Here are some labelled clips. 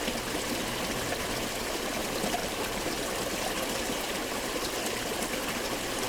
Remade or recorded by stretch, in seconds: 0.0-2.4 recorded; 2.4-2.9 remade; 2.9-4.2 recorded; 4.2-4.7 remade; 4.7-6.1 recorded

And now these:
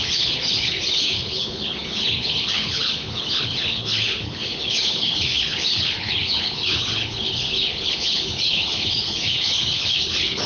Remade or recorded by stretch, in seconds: 0.0-10.5 remade

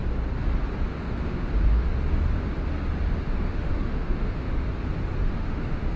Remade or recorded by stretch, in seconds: 0.0-0.8 recorded; 0.8-1.9 remade; 1.9-3.2 recorded; 3.2-4.6 remade; 4.6-5.3 recorded; 5.3-6.0 remade